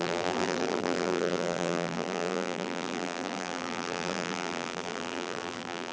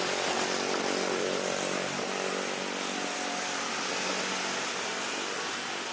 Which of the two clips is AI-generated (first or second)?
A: first